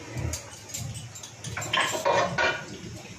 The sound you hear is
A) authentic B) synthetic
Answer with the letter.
A